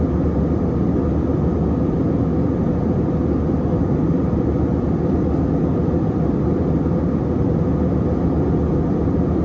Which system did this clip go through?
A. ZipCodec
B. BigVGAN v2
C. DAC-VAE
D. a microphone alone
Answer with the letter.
D